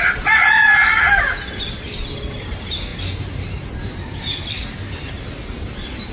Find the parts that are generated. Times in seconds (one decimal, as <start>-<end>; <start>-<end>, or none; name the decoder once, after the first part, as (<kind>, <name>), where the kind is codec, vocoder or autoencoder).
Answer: none